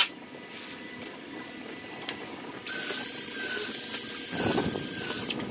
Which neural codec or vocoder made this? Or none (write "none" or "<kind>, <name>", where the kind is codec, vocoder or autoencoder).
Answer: none